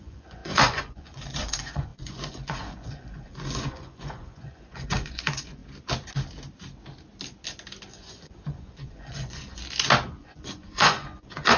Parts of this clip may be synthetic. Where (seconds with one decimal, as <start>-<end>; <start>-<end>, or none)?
0.0-5.6; 7.9-9.6; 10.2-11.6